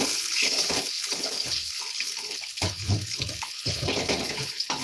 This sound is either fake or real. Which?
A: fake